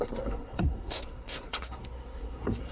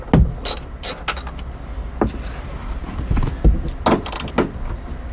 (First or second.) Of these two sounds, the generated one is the first